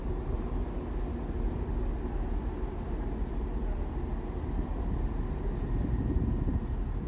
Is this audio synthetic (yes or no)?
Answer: no